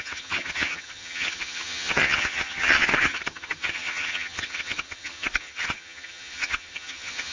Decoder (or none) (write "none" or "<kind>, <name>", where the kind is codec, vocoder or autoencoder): vocoder, HiFi-GAN